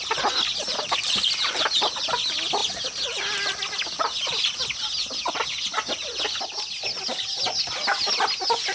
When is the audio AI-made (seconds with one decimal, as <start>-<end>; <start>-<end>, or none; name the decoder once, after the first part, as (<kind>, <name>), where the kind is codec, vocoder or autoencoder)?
none